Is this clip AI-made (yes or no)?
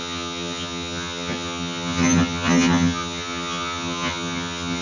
yes